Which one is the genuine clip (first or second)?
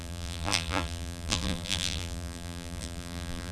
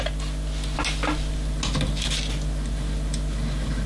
second